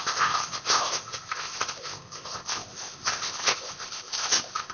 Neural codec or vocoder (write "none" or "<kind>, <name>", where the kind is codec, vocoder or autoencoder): codec, ZipCodec